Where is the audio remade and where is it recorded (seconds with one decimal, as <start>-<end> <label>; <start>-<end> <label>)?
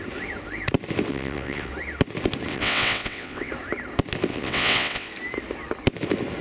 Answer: 0.0-1.1 recorded; 1.1-1.7 remade; 1.7-2.5 recorded; 2.5-3.5 remade; 3.5-4.3 recorded; 4.3-5.1 remade; 5.1-6.4 recorded